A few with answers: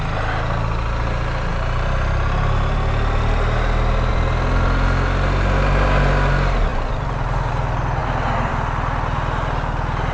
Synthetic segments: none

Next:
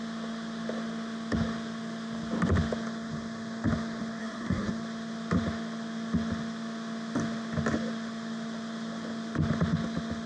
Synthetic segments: 4.2-4.7 (codec, SNAC)

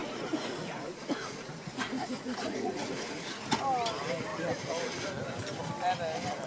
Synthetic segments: 0.0-3.6 (vocoder, Vocos)

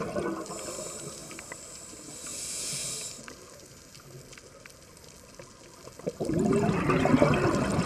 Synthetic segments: 2.3-2.9 (vocoder, Vocos)

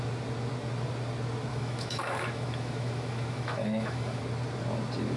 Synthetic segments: 1.5-4.2 (autoencoder, DAC-VAE)

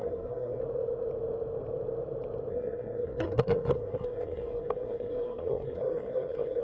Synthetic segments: 0.0-0.6 (codec, SNAC); 2.5-6.6

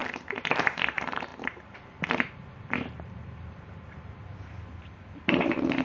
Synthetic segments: 0.6-5.8 (vocoder, BigVGAN v2)